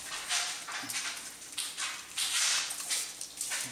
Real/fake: real